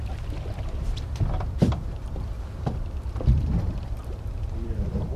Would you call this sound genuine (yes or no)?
no